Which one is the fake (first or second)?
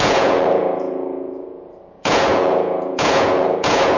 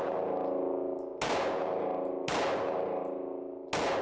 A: first